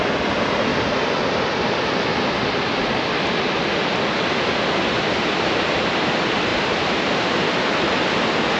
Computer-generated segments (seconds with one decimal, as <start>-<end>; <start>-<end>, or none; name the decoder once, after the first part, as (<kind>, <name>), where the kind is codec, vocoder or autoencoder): 6.5-7.3 (vocoder, BigVGAN v2)